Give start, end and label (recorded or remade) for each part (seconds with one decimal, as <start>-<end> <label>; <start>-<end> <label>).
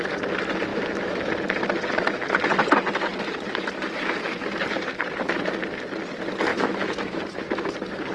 0.0-0.7 recorded; 0.7-1.3 remade; 1.3-6.5 recorded; 6.5-7.2 remade; 7.2-8.1 recorded